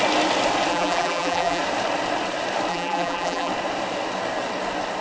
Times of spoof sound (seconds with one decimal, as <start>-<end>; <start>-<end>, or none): 0.7-1.6; 2.7-3.5